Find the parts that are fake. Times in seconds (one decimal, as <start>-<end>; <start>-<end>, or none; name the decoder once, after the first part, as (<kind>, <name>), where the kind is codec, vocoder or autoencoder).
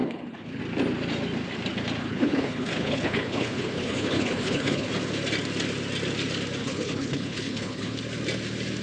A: 0.0-0.6 (codec, HILCodec); 2.0-4.9; 6.6-8.0